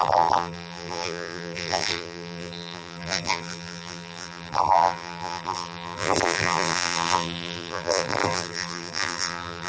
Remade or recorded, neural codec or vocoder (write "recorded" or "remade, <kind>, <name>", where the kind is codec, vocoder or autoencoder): remade, vocoder, BigVGAN v2